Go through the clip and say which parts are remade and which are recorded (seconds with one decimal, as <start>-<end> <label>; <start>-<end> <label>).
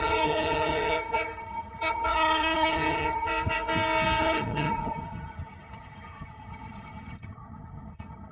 0.0-3.3 remade; 3.3-4.2 recorded; 4.2-8.3 remade